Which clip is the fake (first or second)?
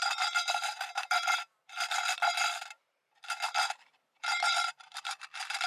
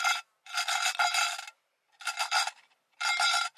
first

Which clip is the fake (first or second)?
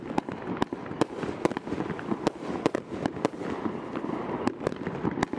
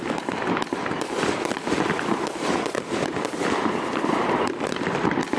second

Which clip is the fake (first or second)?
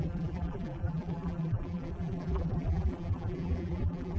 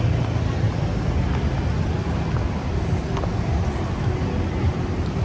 first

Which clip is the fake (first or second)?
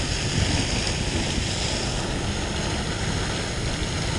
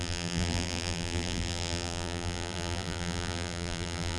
second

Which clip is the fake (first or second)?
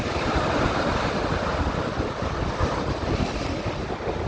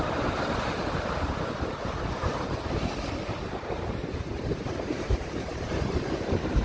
second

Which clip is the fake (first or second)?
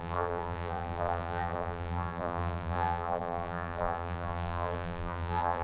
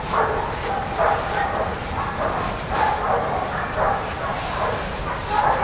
first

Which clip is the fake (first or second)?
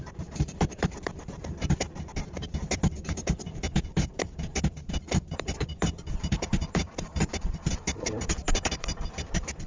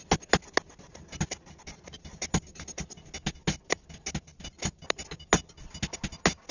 first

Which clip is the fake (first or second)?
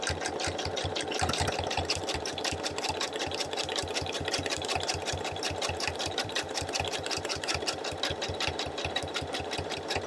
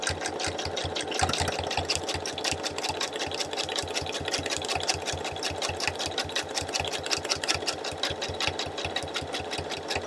first